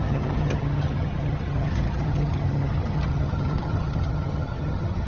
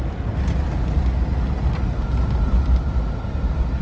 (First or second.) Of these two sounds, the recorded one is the second